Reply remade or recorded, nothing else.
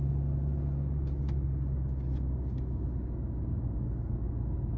recorded